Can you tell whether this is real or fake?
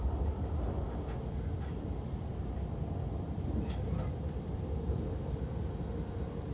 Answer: real